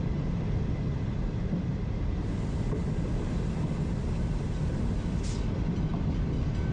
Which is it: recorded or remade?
recorded